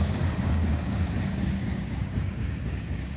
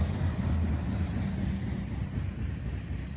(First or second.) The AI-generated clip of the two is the first